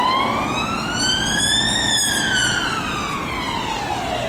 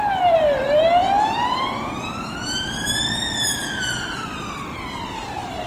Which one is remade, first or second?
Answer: second